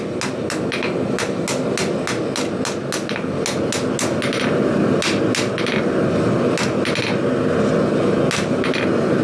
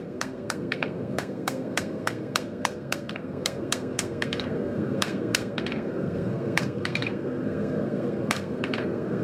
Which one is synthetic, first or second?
second